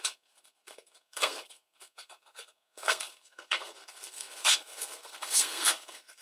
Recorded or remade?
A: remade